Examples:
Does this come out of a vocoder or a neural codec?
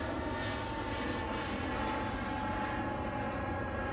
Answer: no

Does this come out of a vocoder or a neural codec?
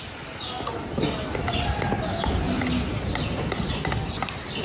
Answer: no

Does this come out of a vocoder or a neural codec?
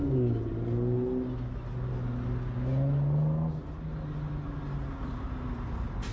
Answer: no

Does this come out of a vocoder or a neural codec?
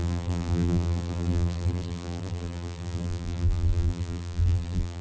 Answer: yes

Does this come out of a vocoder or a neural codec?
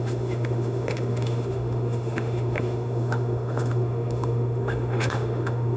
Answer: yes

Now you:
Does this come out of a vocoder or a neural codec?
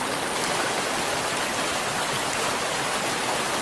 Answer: no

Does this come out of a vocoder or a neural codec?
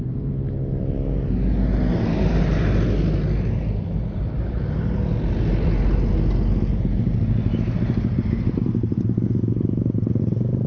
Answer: no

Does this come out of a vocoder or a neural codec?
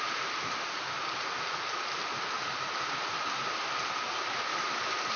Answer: no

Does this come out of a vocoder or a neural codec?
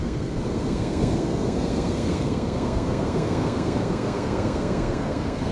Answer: yes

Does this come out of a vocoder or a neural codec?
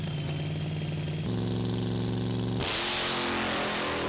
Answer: no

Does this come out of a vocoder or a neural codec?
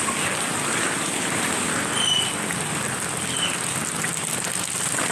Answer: no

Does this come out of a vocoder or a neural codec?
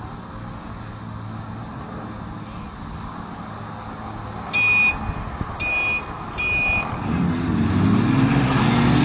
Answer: no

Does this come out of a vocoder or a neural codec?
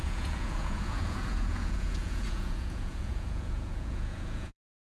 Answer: yes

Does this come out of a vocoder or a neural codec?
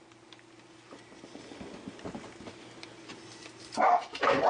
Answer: no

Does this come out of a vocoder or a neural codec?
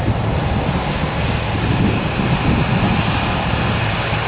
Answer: no